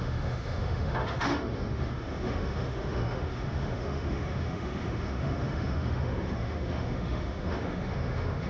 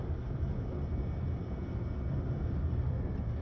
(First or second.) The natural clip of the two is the second